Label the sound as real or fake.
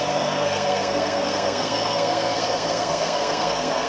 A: fake